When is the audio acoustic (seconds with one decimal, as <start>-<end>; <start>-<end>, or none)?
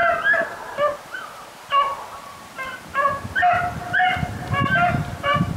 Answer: 0.0-1.0; 1.9-5.6